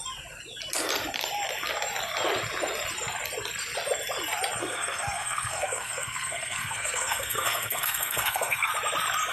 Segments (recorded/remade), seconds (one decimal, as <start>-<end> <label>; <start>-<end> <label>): 0.0-4.6 recorded; 4.6-8.7 remade; 8.7-9.3 recorded